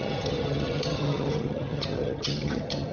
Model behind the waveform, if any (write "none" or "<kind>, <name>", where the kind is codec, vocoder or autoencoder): vocoder, HiFi-GAN